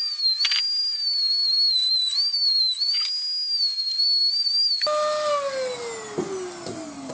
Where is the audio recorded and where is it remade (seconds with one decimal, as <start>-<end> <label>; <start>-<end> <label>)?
0.0-7.1 recorded